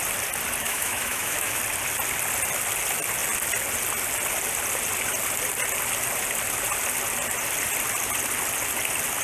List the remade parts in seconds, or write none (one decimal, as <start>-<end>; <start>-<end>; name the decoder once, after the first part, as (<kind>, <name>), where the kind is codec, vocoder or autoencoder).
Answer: 0.6-1.6 (autoencoder, DAC-VAE)